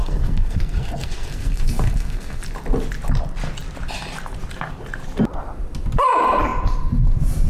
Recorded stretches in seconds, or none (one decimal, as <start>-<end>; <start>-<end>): 2.4-7.5